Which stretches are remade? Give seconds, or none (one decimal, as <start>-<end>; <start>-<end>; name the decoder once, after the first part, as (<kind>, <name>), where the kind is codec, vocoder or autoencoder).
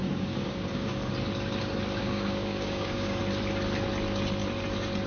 0.0-1.1 (codec, DAC); 2.0-3.2